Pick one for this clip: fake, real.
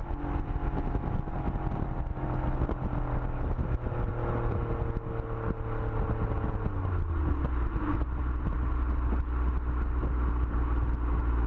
real